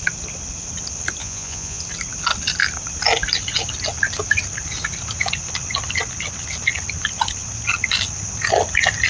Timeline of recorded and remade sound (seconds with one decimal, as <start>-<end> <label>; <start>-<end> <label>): 0.0-1.2 recorded; 1.2-1.8 remade; 1.8-9.1 recorded